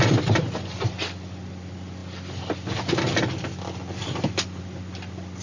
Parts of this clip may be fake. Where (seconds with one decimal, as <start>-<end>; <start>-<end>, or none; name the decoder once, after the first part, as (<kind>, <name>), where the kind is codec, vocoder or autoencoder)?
none